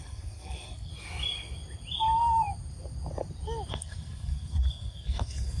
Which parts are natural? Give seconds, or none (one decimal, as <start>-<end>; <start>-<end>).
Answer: 0.9-3.7